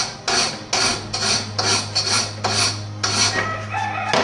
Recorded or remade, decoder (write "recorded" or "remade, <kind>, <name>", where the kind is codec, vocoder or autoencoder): recorded